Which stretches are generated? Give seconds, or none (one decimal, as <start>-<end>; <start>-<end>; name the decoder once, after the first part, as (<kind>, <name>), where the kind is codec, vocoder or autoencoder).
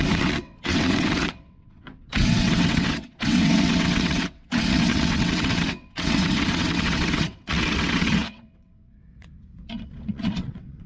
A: 0.0-10.9 (vocoder, WaveNeXt)